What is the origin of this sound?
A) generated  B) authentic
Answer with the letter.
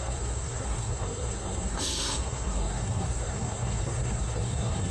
A